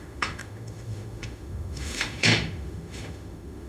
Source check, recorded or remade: remade